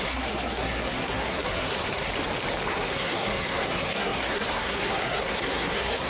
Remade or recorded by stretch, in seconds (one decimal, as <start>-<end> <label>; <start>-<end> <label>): 0.0-2.1 remade; 2.1-2.7 recorded; 2.7-6.1 remade